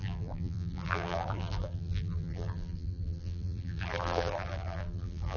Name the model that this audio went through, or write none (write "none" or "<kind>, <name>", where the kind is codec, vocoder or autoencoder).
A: vocoder, BigVGAN v2